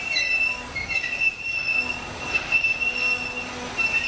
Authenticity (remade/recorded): recorded